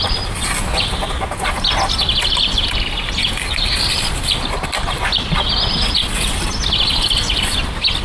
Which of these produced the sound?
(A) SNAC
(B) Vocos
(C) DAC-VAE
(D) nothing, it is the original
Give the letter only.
D